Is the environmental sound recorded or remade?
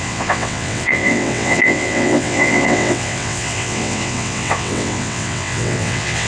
remade